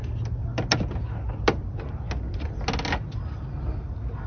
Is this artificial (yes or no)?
no